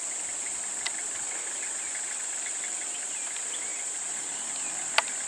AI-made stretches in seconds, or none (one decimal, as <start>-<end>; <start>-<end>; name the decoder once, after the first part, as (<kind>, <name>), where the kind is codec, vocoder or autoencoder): none